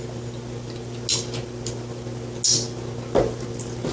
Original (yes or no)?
yes